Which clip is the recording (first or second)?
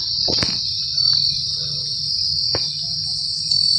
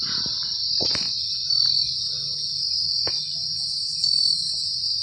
second